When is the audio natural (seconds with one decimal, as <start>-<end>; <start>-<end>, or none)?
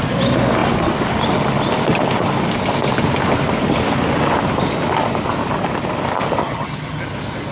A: 0.0-6.4; 7.0-7.5